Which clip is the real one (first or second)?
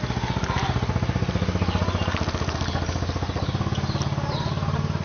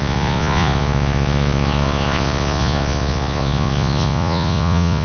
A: first